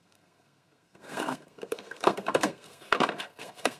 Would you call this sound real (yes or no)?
no